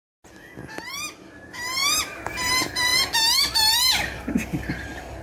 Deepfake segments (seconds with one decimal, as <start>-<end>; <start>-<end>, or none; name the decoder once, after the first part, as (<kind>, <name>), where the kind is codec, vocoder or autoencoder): 1.8-2.5 (vocoder, BigVGAN v2)